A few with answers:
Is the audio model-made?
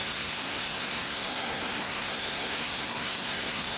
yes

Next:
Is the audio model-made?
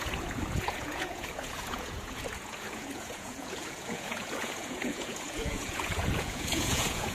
yes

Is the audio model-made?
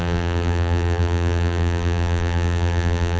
yes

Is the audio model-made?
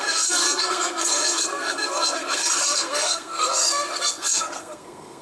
yes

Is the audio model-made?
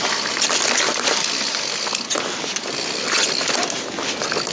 no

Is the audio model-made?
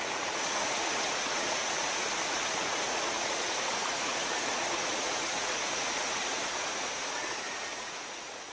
yes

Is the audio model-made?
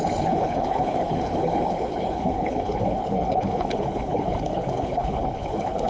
yes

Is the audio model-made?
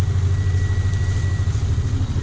yes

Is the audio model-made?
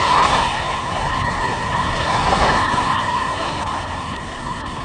yes